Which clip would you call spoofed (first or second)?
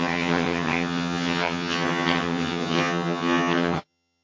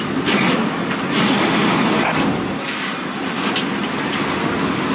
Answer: first